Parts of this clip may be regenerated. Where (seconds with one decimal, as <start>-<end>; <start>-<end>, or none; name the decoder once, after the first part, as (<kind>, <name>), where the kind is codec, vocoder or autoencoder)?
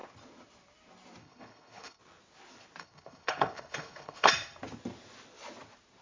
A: 1.2-2.0 (codec, HILCodec); 2.8-4.3